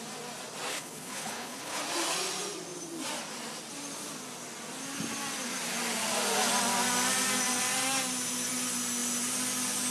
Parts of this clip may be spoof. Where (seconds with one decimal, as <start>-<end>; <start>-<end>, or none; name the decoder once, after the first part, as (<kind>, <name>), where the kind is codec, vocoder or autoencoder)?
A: 0.7-1.8 (codec, HILCodec)